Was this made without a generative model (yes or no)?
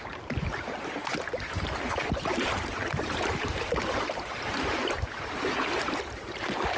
no